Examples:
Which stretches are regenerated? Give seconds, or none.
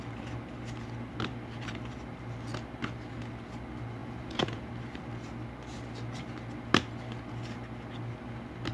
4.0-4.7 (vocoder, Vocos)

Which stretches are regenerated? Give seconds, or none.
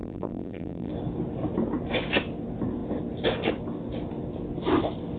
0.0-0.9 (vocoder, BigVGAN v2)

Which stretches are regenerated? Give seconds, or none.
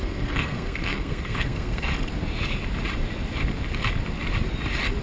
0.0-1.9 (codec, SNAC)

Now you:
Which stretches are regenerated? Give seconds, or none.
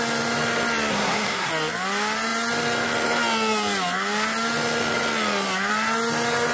0.9-1.5 (codec, SNAC)